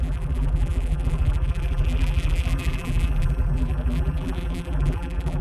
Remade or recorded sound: remade